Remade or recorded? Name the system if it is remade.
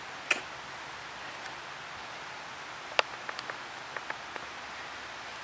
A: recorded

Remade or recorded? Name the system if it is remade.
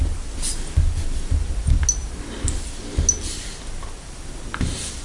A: recorded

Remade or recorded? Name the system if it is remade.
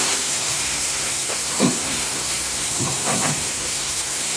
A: remade, codec, SNAC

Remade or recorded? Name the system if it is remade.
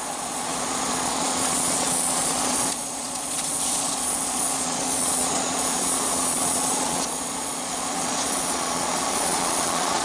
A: remade, vocoder, Vocos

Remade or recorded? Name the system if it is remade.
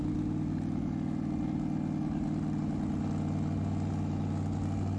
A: recorded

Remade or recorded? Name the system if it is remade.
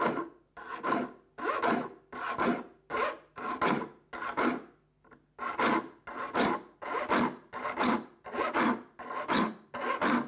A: recorded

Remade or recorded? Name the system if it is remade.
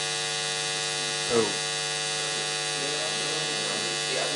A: recorded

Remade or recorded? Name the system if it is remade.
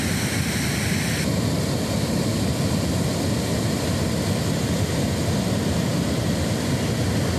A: recorded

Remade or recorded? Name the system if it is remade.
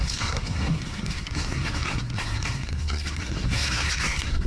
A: remade, codec, SNAC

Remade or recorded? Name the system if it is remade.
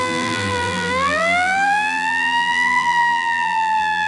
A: remade, vocoder, BigVGAN v2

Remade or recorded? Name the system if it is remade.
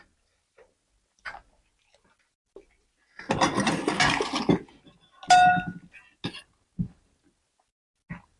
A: recorded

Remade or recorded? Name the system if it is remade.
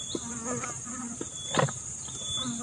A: recorded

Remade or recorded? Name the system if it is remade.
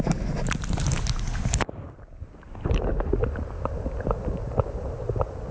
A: recorded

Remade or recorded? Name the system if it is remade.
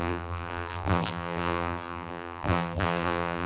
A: remade, vocoder, BigVGAN v2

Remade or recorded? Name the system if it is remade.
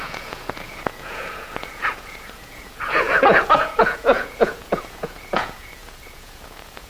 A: remade, vocoder, Vocos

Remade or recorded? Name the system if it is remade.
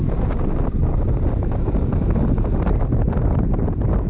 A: recorded